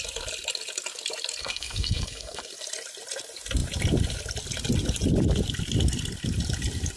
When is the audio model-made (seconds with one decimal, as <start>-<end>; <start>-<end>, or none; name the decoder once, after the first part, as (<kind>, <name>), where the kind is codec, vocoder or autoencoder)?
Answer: 1.4-2.5 (codec, SNAC)